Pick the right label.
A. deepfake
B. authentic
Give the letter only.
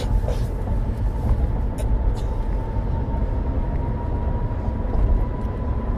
B